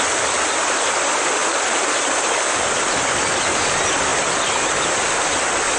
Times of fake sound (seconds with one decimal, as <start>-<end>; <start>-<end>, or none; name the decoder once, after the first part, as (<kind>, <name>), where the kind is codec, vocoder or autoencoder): none